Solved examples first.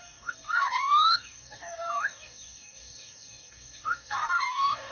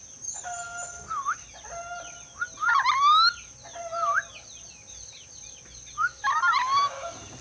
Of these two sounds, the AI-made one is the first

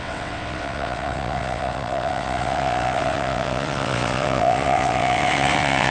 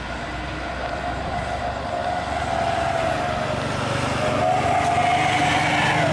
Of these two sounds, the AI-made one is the first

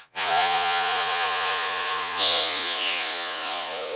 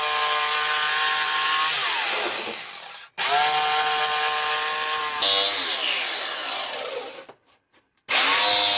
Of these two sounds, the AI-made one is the first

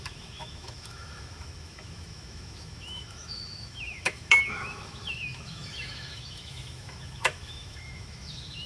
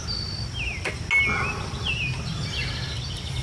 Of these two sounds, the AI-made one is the first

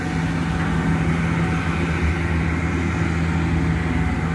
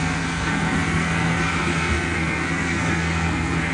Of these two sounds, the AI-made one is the second